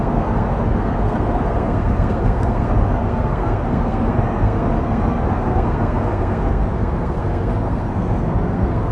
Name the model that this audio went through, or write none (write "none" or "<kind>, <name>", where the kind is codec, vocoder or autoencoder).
codec, SNAC